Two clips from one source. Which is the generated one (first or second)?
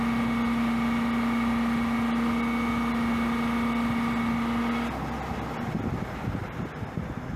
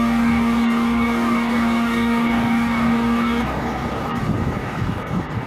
second